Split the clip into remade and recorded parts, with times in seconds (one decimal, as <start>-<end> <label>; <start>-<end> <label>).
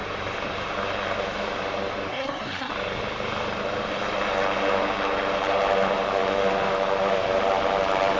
0.0-2.1 recorded; 2.1-2.7 remade; 2.7-8.2 recorded